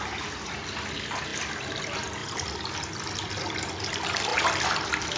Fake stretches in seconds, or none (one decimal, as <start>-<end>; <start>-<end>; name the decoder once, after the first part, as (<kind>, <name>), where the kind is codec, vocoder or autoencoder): none